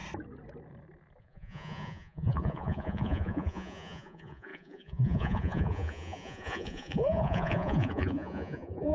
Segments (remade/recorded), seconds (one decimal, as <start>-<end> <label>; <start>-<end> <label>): 0.0-1.2 recorded; 1.2-8.9 remade